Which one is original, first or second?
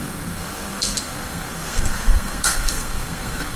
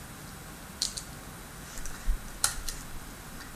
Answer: second